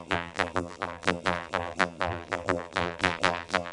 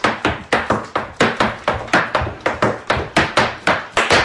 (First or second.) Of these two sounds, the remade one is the first